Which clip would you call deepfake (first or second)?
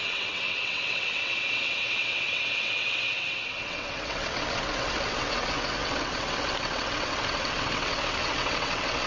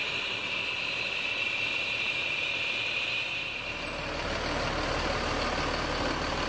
first